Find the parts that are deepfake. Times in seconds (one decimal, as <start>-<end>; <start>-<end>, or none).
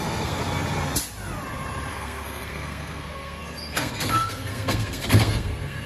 0.0-0.4; 1.9-5.9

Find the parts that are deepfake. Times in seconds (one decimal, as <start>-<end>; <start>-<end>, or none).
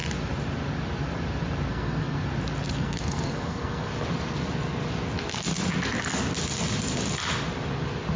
1.7-2.2; 2.7-3.9